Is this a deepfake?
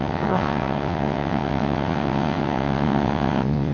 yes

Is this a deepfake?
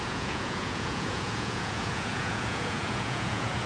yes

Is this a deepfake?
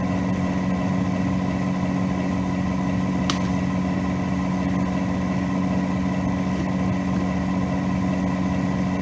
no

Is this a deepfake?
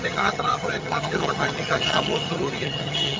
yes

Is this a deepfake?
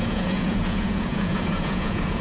yes